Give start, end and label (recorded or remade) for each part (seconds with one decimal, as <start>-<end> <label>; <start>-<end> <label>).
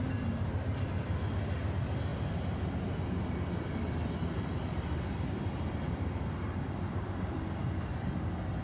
0.0-8.6 recorded